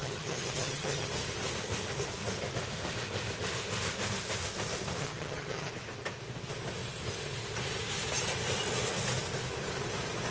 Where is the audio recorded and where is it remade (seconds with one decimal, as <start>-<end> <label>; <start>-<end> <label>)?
0.0-1.1 remade; 1.1-5.0 recorded; 5.0-5.7 remade; 5.7-10.3 recorded